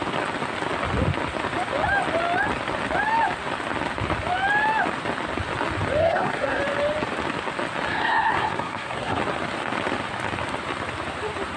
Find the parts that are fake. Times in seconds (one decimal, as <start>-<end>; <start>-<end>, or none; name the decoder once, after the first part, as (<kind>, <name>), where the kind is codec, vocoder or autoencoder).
6.0-6.6 (codec, SNAC); 7.9-9.2